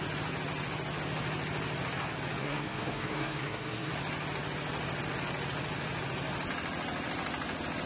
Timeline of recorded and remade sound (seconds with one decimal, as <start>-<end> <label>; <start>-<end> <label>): 0.0-2.4 recorded; 2.4-3.9 remade; 3.9-7.9 recorded